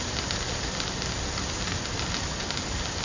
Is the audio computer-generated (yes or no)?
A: no